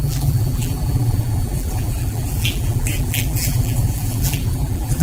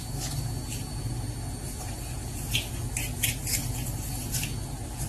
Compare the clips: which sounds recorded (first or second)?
second